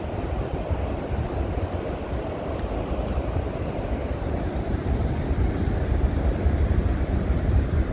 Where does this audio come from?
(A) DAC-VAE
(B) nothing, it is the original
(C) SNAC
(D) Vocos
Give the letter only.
B